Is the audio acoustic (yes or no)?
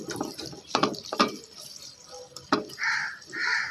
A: no